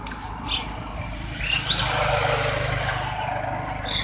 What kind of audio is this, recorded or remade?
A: recorded